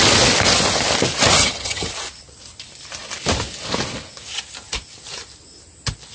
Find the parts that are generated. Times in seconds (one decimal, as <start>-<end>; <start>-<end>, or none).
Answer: 1.4-1.9